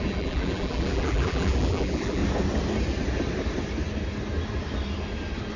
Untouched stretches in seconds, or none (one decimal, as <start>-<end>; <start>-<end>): 2.2-5.6